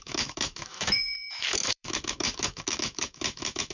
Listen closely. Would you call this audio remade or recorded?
remade